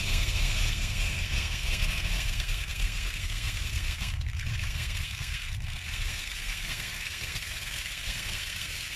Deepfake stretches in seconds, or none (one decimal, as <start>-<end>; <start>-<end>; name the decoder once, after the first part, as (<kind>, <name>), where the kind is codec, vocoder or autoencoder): 0.0-9.0 (codec, SNAC)